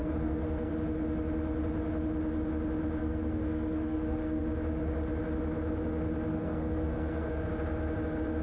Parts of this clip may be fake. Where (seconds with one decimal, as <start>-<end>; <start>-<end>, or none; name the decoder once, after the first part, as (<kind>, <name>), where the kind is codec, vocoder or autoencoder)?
0.0-0.7 (codec, SNAC); 3.0-4.4; 6.3-7.5